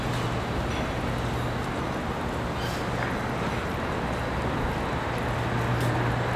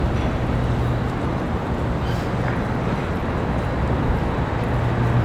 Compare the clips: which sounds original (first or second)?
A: first